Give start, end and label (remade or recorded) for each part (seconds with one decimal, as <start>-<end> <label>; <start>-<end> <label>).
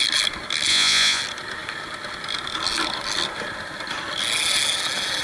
0.0-0.7 recorded; 0.7-1.2 remade; 1.2-5.2 recorded